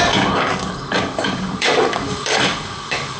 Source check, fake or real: fake